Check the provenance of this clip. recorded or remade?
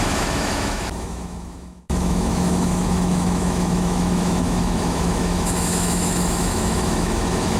remade